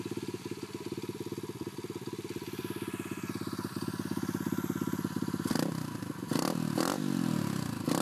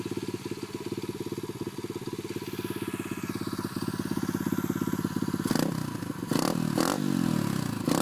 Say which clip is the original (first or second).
second